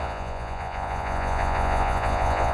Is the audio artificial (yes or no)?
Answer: yes